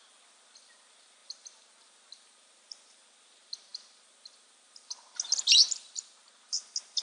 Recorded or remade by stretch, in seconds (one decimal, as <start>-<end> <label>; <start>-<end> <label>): 0.0-7.0 recorded